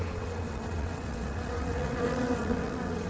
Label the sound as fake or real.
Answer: fake